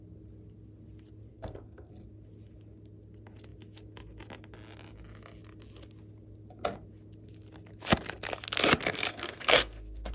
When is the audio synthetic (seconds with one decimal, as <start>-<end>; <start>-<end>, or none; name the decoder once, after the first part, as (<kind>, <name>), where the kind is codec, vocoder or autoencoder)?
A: 1.3-1.9 (codec, SNAC); 9.1-10.1